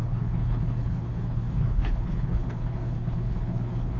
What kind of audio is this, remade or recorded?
remade